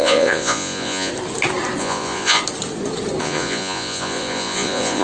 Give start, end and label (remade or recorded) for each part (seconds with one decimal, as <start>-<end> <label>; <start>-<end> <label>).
0.0-1.1 remade; 1.1-1.8 recorded; 1.8-2.4 remade; 2.4-3.2 recorded; 3.2-5.0 remade